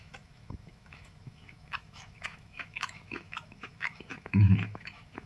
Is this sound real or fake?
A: fake